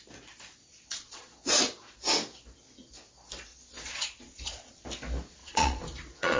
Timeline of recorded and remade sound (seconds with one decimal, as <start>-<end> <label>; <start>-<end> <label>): 0.0-0.6 recorded; 0.6-1.6 remade; 1.6-3.5 recorded; 3.5-4.7 remade; 4.7-5.4 recorded; 5.4-6.4 remade